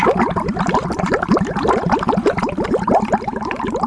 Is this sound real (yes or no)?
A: no